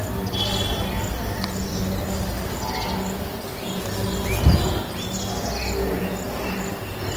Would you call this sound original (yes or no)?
yes